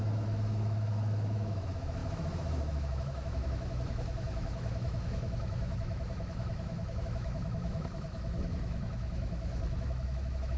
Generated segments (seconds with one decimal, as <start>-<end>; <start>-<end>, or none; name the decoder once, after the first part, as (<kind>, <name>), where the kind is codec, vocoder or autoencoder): 0.0-10.6 (autoencoder, DAC-VAE)